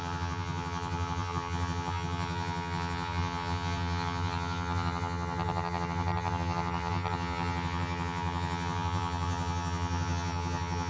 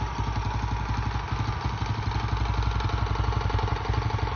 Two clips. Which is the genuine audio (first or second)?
second